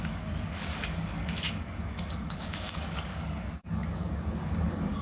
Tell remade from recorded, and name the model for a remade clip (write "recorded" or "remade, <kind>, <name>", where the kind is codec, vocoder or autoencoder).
remade, codec, DAC